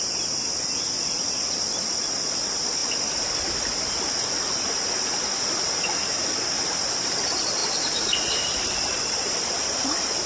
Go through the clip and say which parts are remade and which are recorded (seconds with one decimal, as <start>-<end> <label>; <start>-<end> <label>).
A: 0.0-7.6 recorded; 7.6-10.3 remade